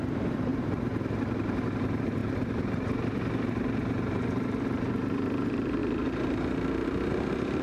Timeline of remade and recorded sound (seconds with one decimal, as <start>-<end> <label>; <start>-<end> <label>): 0.0-7.6 remade

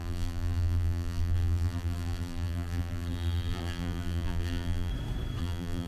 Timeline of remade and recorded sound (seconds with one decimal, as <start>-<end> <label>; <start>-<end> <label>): 0.0-4.9 remade; 4.9-5.4 recorded; 5.4-5.9 remade